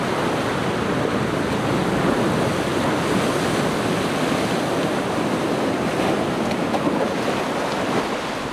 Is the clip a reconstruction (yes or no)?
no